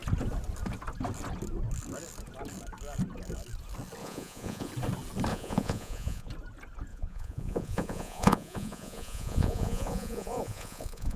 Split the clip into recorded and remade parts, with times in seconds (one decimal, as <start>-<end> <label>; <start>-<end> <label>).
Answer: 0.0-4.0 recorded; 4.0-4.7 remade; 4.7-5.3 recorded; 5.3-6.3 remade; 6.3-6.9 recorded; 6.9-11.2 remade